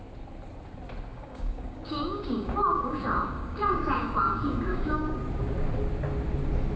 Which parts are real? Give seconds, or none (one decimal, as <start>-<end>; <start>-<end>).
0.0-1.1; 5.2-6.8

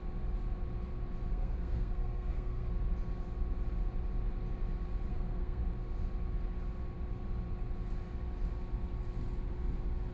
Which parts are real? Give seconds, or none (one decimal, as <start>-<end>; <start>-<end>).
0.0-1.3; 2.7-5.1; 5.6-10.1

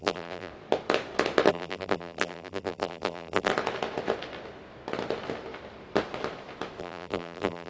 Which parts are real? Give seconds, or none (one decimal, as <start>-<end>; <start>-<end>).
0.5-1.5; 3.5-6.8

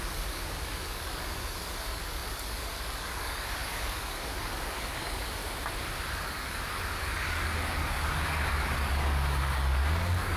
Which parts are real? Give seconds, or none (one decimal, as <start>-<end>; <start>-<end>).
5.4-6.1

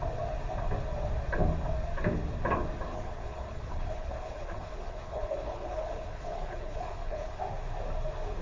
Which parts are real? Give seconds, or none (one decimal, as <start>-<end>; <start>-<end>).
0.0-2.9; 7.4-8.4